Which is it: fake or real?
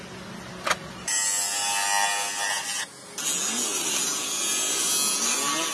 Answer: real